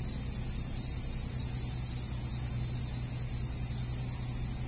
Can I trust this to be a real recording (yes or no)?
yes